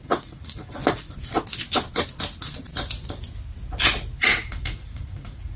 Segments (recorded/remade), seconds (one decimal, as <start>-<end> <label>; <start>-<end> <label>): 0.0-0.8 remade; 0.8-4.2 recorded; 4.2-5.6 remade